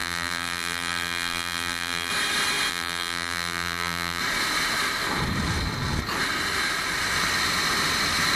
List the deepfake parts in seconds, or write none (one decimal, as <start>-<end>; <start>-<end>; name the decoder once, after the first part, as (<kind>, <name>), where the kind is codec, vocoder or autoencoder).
0.0-2.1 (vocoder, BigVGAN v2); 2.7-4.2